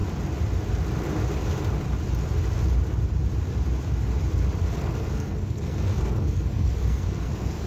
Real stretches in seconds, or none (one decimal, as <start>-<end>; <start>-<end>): 0.0-4.6